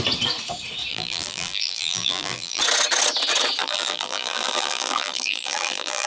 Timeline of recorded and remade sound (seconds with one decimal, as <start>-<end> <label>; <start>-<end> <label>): 0.0-0.9 recorded; 0.9-2.6 remade; 2.6-3.6 recorded; 3.6-6.1 remade